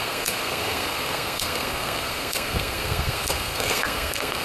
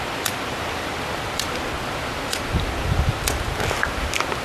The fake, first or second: first